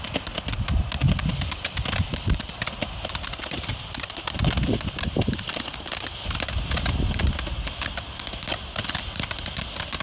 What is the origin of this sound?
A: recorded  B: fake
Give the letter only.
A